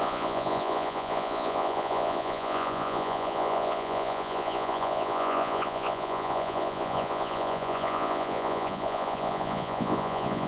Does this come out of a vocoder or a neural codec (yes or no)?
yes